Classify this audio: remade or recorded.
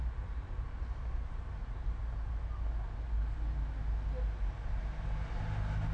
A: recorded